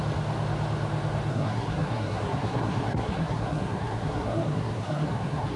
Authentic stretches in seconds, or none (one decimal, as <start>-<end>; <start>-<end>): 0.0-1.3